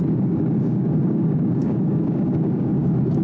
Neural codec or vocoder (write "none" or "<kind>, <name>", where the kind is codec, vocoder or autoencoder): codec, DAC